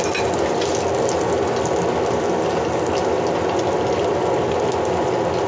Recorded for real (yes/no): yes